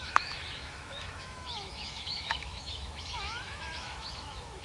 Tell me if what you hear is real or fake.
fake